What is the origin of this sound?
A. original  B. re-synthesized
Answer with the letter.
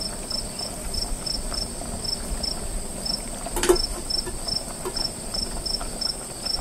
A